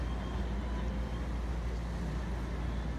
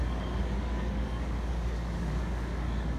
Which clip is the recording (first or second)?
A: first